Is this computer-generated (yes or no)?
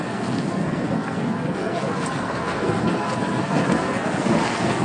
yes